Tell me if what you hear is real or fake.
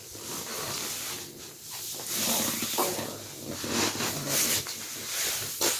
real